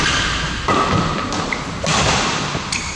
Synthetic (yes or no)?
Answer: no